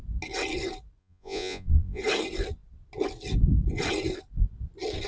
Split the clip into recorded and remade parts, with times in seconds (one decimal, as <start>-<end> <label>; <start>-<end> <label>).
0.0-1.0 recorded; 1.0-2.0 remade; 2.0-5.1 recorded